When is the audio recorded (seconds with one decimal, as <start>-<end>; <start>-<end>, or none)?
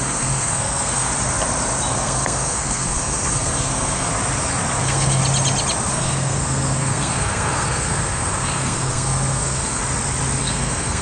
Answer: 1.1-1.9; 4.1-4.8; 5.2-5.9; 9.8-10.4